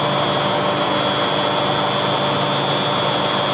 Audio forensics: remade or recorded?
recorded